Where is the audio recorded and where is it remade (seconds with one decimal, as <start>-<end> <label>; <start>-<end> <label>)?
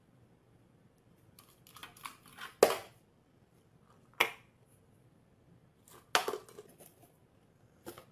0.0-8.1 recorded